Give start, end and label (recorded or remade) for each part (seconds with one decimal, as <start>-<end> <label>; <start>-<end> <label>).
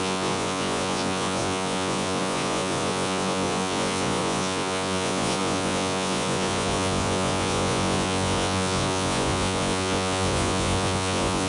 0.0-11.5 remade